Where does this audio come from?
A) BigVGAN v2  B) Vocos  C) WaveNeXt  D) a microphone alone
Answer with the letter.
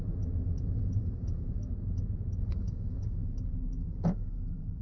B